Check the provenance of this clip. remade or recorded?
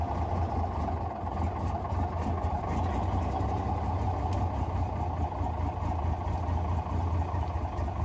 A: recorded